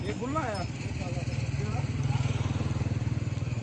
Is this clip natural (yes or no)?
yes